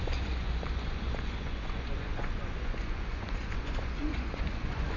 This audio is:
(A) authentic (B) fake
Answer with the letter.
B